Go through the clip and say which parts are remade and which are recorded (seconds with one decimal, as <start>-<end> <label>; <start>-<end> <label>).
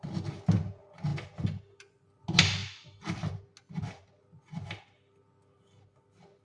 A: 0.0-6.4 recorded